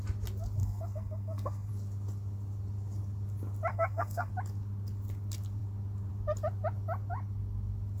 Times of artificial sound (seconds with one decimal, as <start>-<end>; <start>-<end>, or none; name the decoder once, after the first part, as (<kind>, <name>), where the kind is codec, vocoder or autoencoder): 0.6-1.7 (codec, SNAC); 3.7-4.3

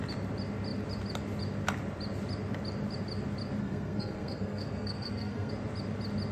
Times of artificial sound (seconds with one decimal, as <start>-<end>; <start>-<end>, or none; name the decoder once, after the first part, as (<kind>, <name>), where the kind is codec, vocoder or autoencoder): 3.6-5.5 (codec, SNAC)

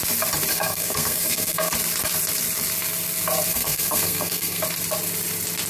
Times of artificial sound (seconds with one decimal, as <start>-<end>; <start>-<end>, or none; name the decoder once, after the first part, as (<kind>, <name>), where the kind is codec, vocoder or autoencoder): 0.5-1.7 (codec, SNAC); 3.5-4.6

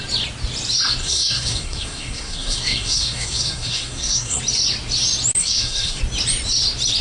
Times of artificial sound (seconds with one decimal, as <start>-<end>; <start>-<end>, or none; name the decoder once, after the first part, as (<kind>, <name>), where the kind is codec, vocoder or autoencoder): 1.0-4.4 (codec, SNAC); 5.4-6.0

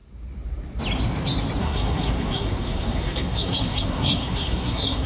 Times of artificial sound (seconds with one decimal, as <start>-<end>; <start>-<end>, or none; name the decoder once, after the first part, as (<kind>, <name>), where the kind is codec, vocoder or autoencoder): 1.6-5.1 (codec, SNAC)

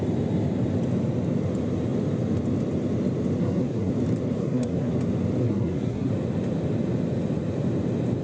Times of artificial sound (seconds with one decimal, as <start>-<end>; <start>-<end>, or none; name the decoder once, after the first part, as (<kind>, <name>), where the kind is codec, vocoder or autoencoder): 3.4-3.9 (codec, SNAC); 4.4-4.9; 5.4-6.1

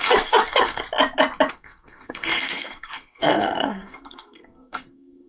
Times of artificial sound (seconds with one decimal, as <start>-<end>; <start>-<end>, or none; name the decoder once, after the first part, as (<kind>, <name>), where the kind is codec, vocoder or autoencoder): 0.0-0.8 (codec, SNAC); 1.5-5.3